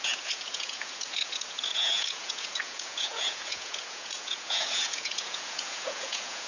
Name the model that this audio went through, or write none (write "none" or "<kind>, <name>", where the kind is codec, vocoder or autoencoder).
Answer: vocoder, Vocos